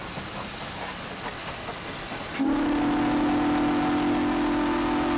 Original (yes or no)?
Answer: yes